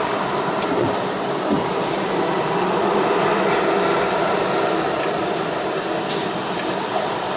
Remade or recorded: recorded